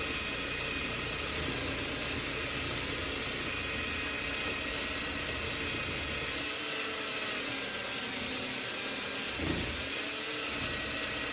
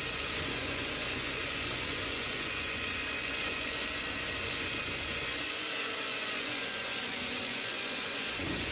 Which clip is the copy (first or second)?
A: second